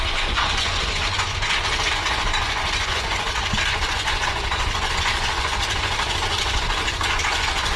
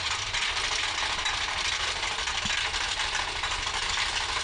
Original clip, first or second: second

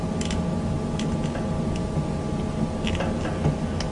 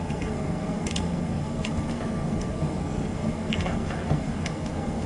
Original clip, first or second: first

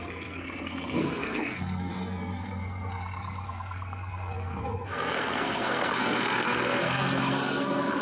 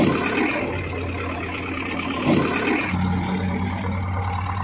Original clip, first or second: second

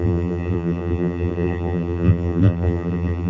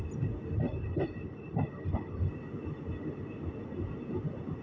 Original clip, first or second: second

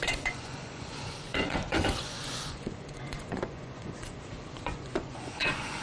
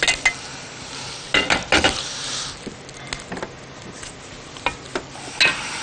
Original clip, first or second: second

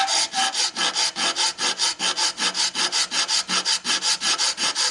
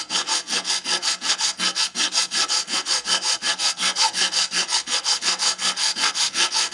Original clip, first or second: first